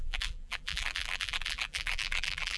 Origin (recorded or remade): remade